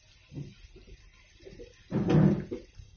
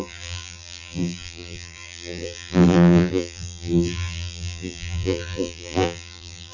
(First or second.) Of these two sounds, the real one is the first